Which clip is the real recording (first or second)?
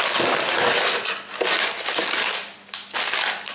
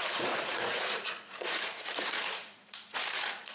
first